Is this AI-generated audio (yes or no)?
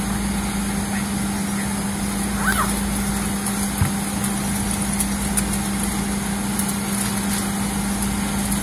no